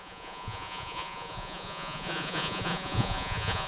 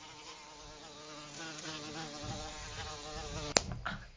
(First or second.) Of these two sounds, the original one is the second